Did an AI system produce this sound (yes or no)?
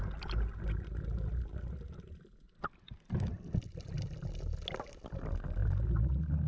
no